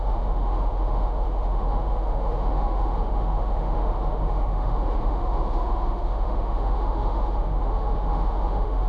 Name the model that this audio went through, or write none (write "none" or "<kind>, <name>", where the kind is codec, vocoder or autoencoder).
autoencoder, DAC-VAE